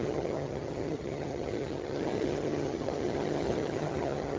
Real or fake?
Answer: fake